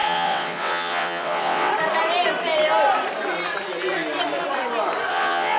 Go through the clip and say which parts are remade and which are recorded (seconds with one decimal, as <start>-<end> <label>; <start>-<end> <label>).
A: 0.0-1.7 remade; 1.7-5.1 recorded; 5.1-5.6 remade